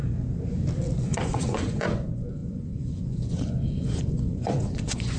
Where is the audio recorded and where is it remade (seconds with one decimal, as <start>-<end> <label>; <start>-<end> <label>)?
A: 0.0-1.0 recorded; 1.0-5.2 remade